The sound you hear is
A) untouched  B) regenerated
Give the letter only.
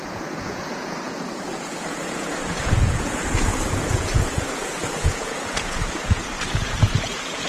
B